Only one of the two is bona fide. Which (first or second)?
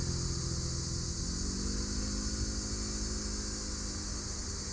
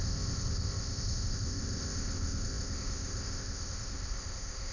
first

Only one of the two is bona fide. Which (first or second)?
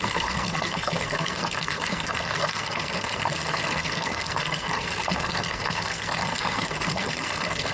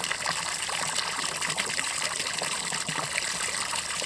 second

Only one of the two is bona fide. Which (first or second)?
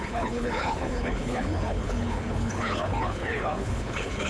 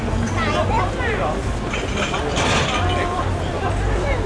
second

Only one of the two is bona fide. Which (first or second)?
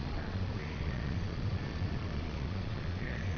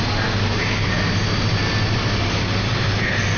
second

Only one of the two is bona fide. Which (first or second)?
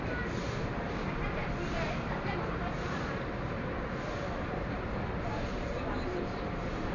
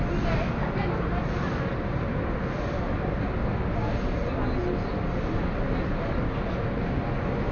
second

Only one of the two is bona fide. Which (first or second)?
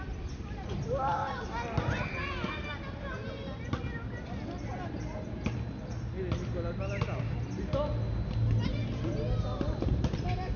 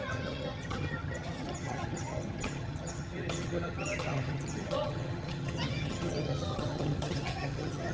first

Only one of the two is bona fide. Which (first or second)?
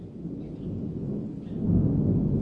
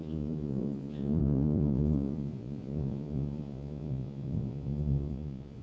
first